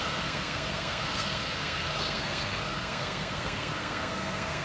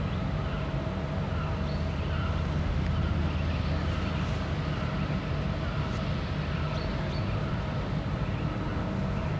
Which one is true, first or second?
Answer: second